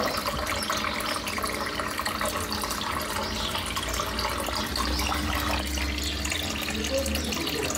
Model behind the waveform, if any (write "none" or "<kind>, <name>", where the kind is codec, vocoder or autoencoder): none